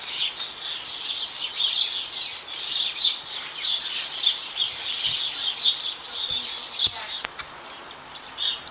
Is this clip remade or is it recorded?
recorded